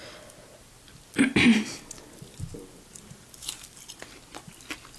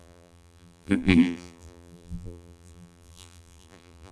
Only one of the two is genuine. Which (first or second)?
first